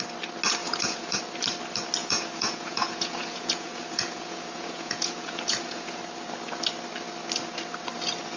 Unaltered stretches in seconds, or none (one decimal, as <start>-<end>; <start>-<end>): 0.0-0.6; 1.2-2.0; 6.0-8.4